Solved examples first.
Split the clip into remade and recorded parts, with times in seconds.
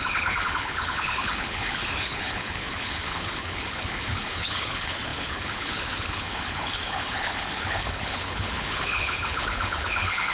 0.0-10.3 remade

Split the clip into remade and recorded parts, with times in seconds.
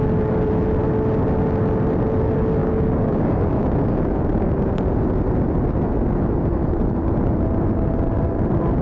0.0-2.6 recorded; 2.6-4.7 remade; 4.7-8.8 recorded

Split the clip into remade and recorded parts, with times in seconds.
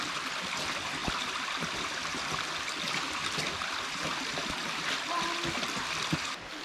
0.0-1.0 recorded; 1.0-2.6 remade; 2.6-4.6 recorded; 4.6-6.1 remade; 6.1-6.6 recorded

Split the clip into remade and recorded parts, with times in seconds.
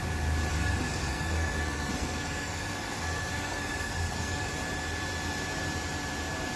0.0-0.5 recorded; 0.5-4.5 remade; 4.5-6.6 recorded